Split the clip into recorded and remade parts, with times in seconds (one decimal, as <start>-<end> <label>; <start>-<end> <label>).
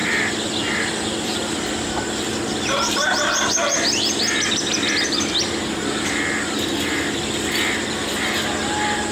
0.0-9.1 remade